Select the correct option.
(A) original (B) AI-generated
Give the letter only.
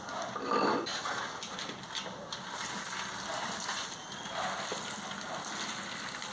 A